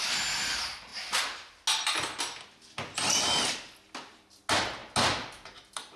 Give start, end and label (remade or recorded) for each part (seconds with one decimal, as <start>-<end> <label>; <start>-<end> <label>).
0.0-6.0 recorded